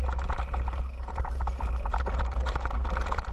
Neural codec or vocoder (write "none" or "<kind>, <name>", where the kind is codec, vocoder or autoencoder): none